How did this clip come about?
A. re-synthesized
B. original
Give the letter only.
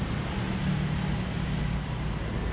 B